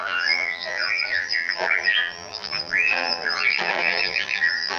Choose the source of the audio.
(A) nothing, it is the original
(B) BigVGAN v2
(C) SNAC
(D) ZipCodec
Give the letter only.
B